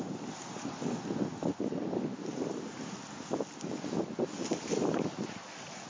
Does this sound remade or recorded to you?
recorded